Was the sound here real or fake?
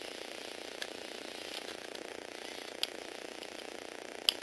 real